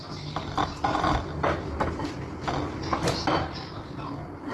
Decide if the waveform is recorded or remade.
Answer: recorded